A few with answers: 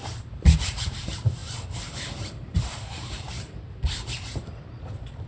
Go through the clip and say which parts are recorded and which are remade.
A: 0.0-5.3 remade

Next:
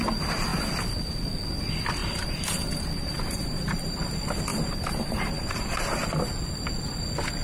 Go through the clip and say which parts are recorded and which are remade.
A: 0.0-2.0 recorded; 2.0-4.1 remade; 4.1-4.5 recorded; 4.5-5.9 remade; 5.9-7.4 recorded

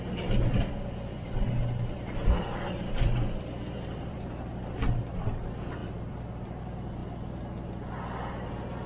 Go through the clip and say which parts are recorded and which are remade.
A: 0.0-1.1 recorded; 1.1-4.3 remade; 4.3-5.8 recorded; 5.8-6.6 remade; 6.6-8.9 recorded

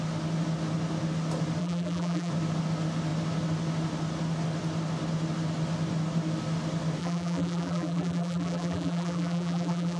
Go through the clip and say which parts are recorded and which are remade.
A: 0.0-1.6 recorded; 1.6-2.3 remade; 2.3-7.0 recorded; 7.0-10.0 remade

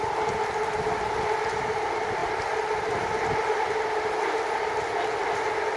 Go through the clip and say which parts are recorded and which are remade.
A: 0.0-2.2 remade; 2.2-5.8 recorded

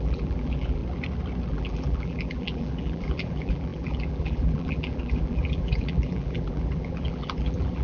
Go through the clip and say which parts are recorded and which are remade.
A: 0.0-0.8 remade; 0.8-1.5 recorded; 1.5-7.8 remade

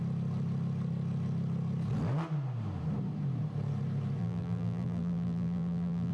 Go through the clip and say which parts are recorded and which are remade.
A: 0.0-4.2 recorded; 4.2-6.1 remade